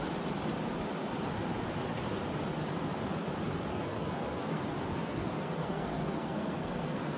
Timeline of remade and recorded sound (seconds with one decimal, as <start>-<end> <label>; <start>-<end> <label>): 0.0-3.7 recorded; 3.7-7.2 remade